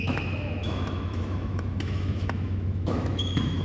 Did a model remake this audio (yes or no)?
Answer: yes